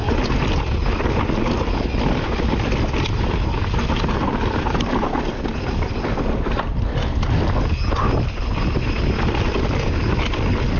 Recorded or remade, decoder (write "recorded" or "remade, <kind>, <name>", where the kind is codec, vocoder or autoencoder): recorded